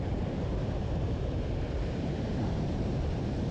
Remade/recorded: remade